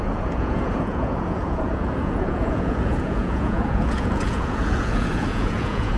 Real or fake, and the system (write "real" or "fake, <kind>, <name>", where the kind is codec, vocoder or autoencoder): fake, vocoder, Vocos